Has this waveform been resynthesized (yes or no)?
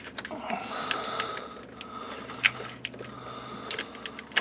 no